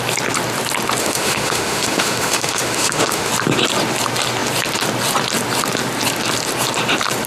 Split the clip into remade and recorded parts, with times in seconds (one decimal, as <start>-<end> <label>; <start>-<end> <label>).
0.0-1.0 recorded; 1.0-3.3 remade; 3.3-7.3 recorded